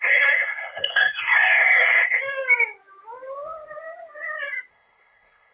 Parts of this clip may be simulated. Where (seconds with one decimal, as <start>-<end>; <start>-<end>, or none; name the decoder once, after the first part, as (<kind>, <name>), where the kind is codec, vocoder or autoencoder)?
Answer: 0.0-2.2 (codec, SNAC); 4.7-5.5